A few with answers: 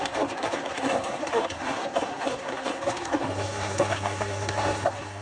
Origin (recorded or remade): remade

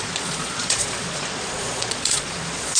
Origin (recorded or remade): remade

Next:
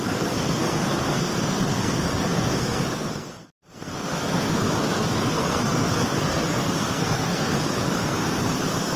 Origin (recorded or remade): remade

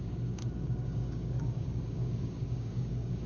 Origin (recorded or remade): remade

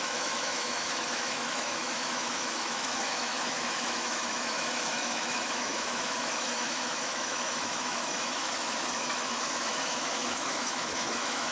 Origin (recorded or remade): remade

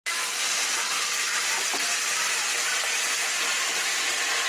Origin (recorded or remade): recorded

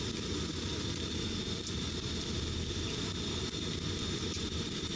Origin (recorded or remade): recorded